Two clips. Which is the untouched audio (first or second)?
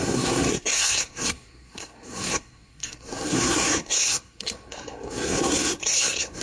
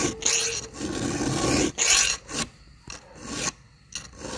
second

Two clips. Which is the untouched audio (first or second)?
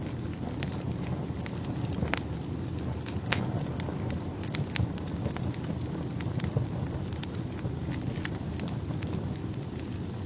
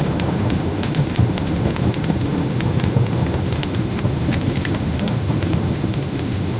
first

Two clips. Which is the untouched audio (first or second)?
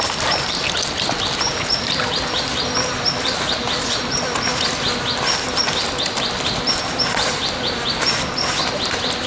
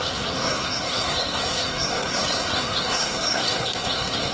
first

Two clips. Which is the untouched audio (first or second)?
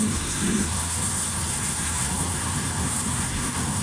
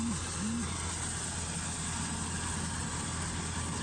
second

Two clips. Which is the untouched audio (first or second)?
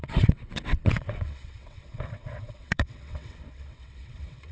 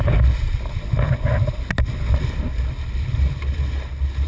second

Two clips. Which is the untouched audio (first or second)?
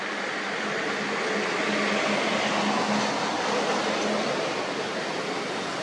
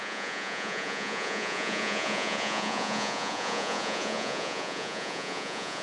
first